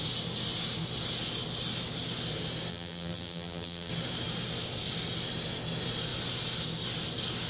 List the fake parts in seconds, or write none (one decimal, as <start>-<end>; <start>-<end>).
2.7-3.9